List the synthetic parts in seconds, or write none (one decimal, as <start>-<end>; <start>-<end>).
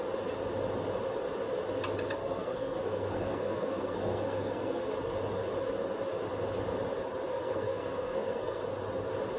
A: 2.2-4.9; 7.3-8.6